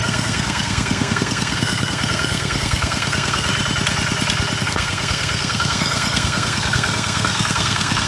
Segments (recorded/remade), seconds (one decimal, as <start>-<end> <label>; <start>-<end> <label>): 0.0-3.5 remade; 3.5-4.6 recorded; 4.6-8.1 remade